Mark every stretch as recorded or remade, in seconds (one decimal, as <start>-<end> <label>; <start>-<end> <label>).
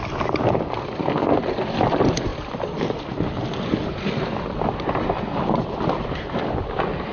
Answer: 0.0-7.1 recorded